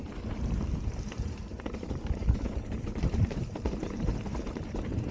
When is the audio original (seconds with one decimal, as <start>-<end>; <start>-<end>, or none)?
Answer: none